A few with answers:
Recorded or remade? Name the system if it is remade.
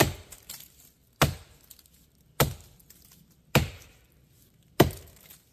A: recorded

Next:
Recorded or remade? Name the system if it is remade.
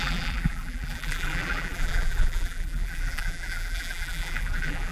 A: remade, vocoder, BigVGAN v2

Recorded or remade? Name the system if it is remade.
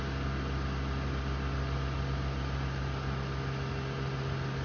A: recorded